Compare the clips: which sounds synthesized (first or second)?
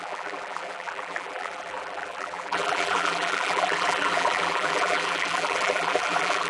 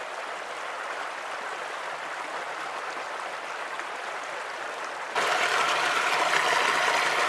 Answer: first